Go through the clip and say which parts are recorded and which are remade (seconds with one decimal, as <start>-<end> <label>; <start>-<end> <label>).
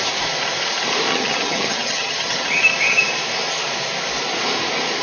0.0-1.1 recorded; 1.1-2.6 remade; 2.6-5.0 recorded